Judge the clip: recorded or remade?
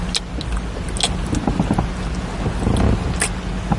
recorded